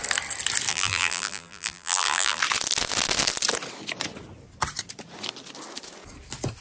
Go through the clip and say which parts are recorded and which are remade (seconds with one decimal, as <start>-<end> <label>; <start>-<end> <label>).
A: 0.0-0.7 recorded; 0.7-2.4 remade; 2.4-6.6 recorded